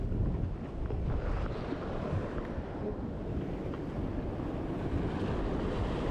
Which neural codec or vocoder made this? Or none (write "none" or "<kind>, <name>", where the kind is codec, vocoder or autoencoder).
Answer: none